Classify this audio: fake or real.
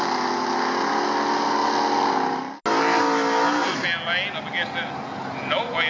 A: real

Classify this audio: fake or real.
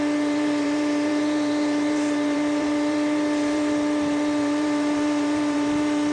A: fake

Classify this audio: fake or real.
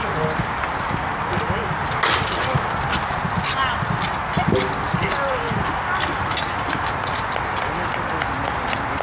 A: real